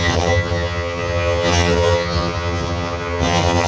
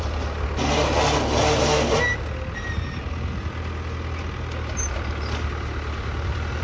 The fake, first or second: first